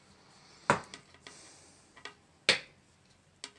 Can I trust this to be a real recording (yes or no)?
yes